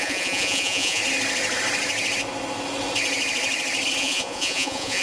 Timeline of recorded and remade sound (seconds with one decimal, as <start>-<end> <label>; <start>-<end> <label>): 0.0-1.0 remade; 1.0-4.0 recorded; 4.0-5.0 remade